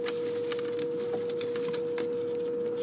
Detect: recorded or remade recorded